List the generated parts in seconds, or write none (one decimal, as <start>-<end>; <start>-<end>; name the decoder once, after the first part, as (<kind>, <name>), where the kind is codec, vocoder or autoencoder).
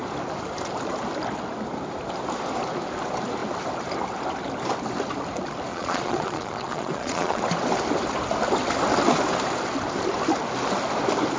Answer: 5.7-7.4 (vocoder, Vocos)